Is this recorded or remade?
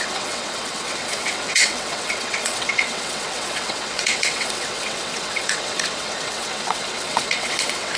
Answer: remade